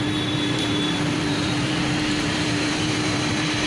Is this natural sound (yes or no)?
no